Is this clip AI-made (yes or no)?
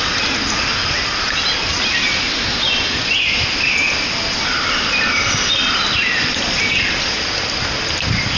no